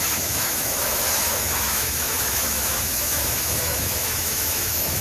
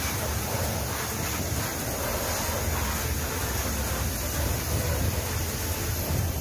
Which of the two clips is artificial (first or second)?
first